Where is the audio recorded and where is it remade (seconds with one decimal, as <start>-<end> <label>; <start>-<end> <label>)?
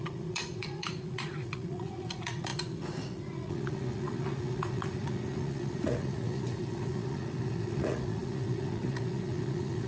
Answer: 0.0-9.9 remade